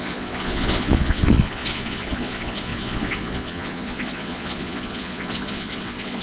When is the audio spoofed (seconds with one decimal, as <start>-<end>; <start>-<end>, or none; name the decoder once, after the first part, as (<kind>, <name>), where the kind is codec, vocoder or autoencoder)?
0.0-6.2 (vocoder, Vocos)